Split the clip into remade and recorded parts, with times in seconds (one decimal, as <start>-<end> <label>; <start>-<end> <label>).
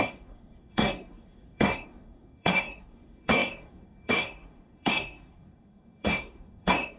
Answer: 0.0-7.0 remade